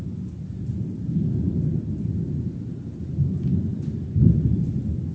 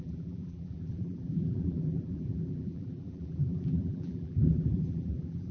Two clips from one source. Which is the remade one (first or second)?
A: second